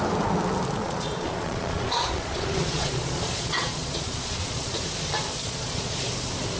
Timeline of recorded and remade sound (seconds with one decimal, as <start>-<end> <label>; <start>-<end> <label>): 0.0-0.8 recorded; 0.8-4.8 remade; 4.8-5.4 recorded; 5.4-6.1 remade; 6.1-6.6 recorded